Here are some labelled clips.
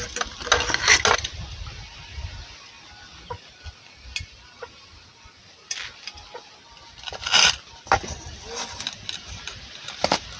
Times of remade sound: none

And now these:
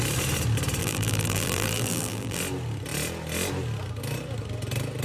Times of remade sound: 0.8-2.4